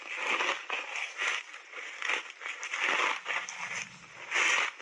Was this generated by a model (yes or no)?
no